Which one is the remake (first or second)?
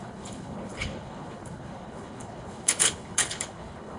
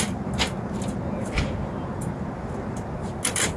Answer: first